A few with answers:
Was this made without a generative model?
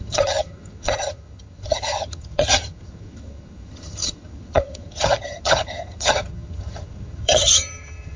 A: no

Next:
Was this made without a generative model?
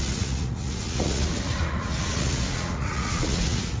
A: no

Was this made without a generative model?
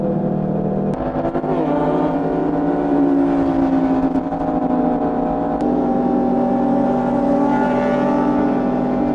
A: yes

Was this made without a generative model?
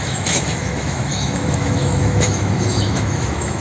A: no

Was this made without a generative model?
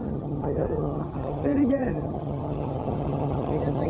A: no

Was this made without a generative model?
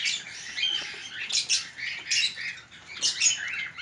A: yes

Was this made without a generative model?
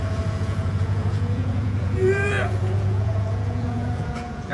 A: no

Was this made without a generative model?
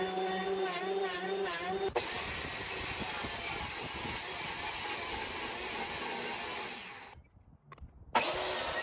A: yes